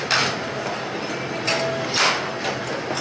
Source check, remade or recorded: recorded